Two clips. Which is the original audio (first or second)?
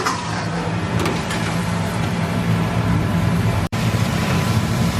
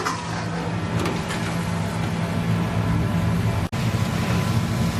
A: second